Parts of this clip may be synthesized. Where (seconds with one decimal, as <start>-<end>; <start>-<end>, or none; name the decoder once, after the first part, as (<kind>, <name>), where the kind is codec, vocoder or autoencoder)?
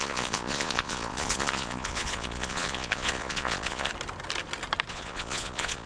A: 0.0-3.9 (vocoder, Vocos); 4.9-5.9